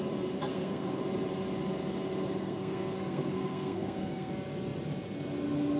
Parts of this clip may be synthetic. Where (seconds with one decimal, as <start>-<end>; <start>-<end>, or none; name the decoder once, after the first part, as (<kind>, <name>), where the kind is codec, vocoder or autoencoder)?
0.5-1.0 (codec, SNAC); 2.4-4.3